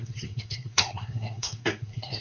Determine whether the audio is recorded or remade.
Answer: remade